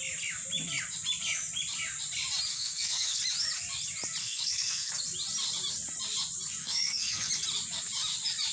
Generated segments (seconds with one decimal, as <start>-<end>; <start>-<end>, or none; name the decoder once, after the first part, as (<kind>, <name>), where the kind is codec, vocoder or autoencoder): 2.5-3.2 (codec, SNAC); 4.2-4.9; 6.6-7.3